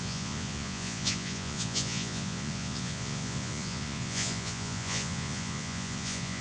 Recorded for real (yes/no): no